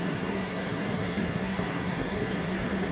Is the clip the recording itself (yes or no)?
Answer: no